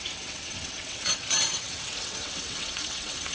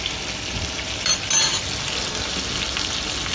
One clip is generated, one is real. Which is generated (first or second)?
first